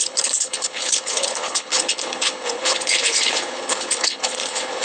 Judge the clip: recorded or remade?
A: remade